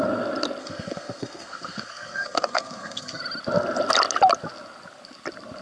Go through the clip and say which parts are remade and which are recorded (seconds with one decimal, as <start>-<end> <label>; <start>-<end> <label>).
0.0-0.6 recorded; 0.6-3.2 remade; 3.2-5.6 recorded